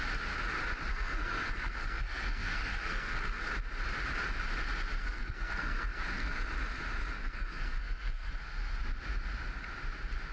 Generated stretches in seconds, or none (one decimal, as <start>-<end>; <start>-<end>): 0.9-3.5; 5.0-6.4; 7.2-8.3